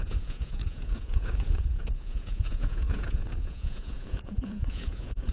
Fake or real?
fake